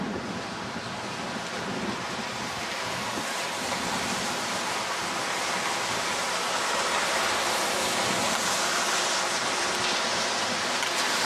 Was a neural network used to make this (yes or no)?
no